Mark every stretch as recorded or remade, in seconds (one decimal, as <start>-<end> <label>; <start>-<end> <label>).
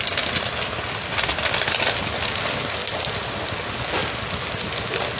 0.0-5.2 recorded